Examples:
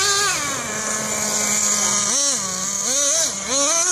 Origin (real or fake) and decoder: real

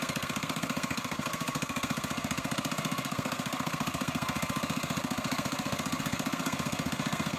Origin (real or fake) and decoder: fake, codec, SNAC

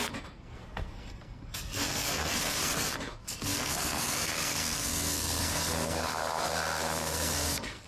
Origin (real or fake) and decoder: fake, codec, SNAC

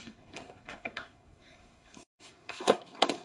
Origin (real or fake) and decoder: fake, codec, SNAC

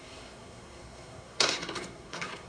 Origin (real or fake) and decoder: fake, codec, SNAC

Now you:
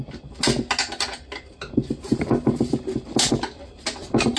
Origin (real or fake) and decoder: real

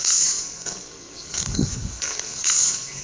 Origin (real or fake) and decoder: fake, codec, SNAC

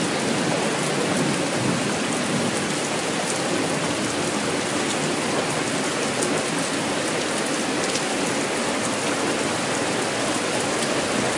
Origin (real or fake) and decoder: real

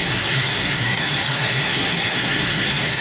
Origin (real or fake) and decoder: fake, codec, SNAC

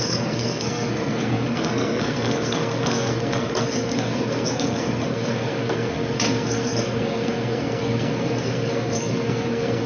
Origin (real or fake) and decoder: fake, codec, SNAC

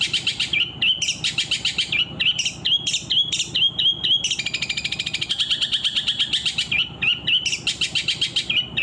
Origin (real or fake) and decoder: real